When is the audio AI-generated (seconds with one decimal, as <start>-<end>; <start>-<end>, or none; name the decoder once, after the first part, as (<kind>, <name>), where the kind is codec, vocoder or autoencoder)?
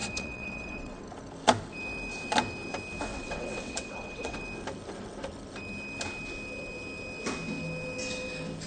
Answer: 0.0-1.0 (vocoder, WaveNeXt); 3.1-4.4